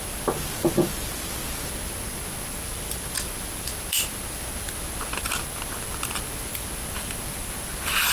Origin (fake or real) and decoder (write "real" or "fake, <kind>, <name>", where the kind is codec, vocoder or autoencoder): real